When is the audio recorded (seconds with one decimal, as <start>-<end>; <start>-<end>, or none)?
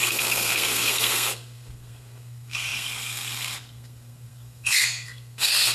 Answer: none